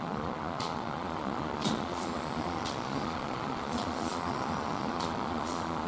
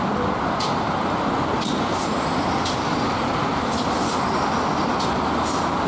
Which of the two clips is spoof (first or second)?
first